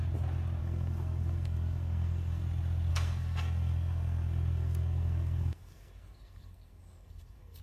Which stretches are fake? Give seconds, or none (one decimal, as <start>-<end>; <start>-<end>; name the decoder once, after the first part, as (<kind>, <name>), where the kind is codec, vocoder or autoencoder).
0.6-2.4 (codec, SNAC); 2.9-7.6

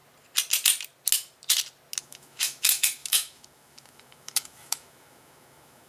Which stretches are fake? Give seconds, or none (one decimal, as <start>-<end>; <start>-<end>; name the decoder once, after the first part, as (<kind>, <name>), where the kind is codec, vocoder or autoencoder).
2.0-5.9 (autoencoder, DAC-VAE)

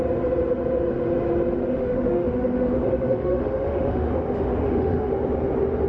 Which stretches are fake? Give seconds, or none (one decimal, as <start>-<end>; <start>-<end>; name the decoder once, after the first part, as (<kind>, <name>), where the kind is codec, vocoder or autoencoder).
1.6-5.1 (autoencoder, DAC-VAE)